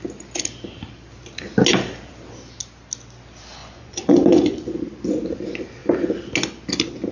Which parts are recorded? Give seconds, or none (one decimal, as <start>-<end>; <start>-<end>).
0.0-3.6; 4.8-7.1